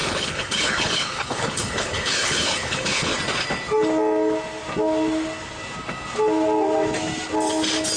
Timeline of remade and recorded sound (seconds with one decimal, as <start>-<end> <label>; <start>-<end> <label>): 0.0-3.1 remade; 3.1-8.0 recorded